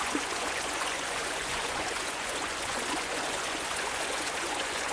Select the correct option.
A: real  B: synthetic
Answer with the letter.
B